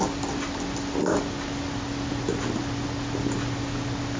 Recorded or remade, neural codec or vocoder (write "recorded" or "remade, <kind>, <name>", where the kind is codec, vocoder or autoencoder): recorded